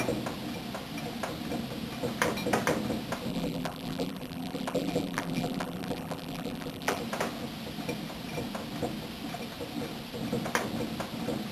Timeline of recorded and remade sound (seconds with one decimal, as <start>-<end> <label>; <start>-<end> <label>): 0.0-3.3 recorded; 3.3-7.0 remade; 7.0-11.5 recorded